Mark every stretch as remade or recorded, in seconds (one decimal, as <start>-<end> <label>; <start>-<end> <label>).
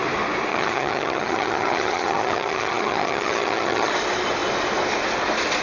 0.0-0.5 recorded; 0.5-3.9 remade; 3.9-5.6 recorded